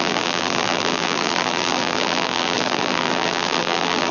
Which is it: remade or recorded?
remade